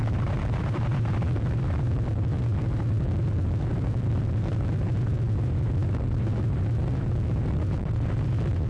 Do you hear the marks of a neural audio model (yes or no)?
yes